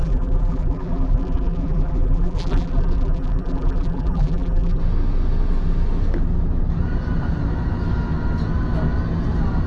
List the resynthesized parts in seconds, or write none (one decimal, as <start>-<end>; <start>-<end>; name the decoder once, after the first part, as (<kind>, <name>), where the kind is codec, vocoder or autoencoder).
0.0-4.8 (vocoder, BigVGAN v2)